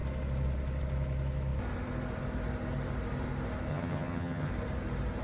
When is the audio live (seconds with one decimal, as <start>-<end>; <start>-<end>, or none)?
0.0-3.7; 4.5-5.2